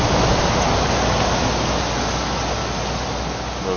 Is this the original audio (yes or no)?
yes